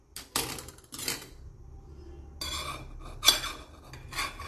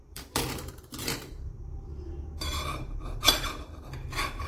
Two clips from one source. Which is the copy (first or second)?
second